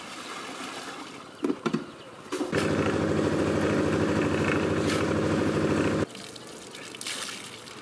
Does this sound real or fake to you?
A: real